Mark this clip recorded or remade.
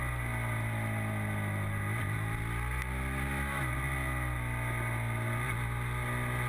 recorded